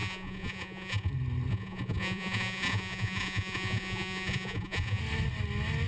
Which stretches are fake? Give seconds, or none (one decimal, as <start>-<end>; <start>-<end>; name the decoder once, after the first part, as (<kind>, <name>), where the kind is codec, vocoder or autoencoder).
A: 0.0-1.1 (vocoder, Vocos); 1.5-5.0